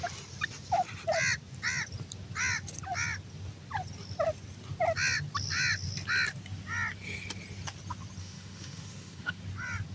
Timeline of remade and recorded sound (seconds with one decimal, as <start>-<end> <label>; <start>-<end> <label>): 0.0-8.2 recorded; 8.2-9.4 remade; 9.4-9.9 recorded